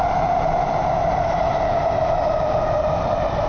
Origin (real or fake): fake